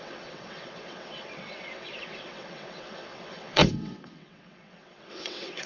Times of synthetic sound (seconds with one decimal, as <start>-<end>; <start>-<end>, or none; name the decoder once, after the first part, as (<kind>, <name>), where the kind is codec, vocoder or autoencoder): 0.0-5.7 (vocoder, WaveNeXt)